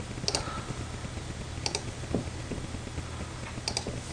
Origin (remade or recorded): recorded